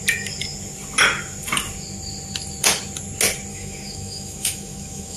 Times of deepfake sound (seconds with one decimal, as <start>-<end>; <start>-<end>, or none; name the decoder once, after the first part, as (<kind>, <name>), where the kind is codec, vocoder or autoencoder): 3.5-5.2 (autoencoder, DAC-VAE)